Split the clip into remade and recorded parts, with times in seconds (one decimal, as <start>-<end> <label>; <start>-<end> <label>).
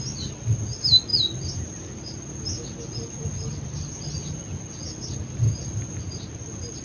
0.0-6.8 recorded